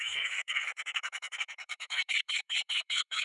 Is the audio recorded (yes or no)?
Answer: no